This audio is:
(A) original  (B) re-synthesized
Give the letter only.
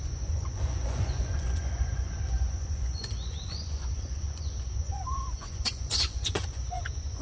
B